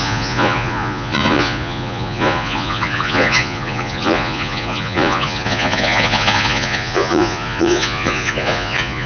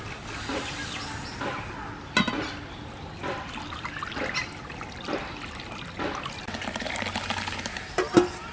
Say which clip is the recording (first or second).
second